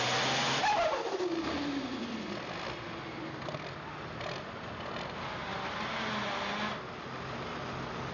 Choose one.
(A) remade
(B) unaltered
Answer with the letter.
B